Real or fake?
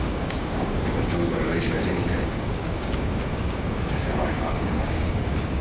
fake